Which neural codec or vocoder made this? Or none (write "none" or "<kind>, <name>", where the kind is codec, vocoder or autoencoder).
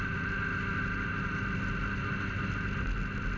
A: none